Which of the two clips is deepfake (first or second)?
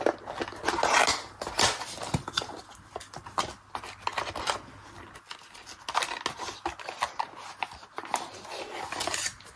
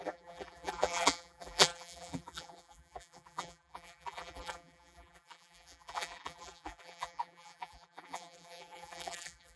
second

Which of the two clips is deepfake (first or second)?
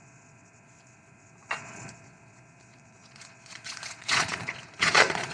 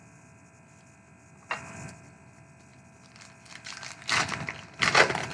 first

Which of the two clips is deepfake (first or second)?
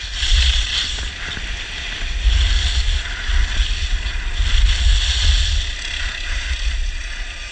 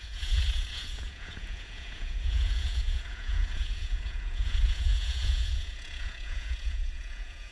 second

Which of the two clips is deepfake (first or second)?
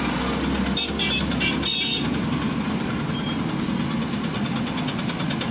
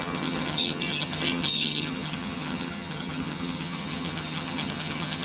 second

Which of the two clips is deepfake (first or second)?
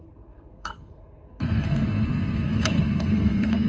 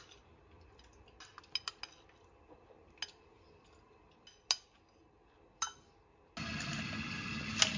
first